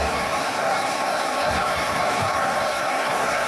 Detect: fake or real fake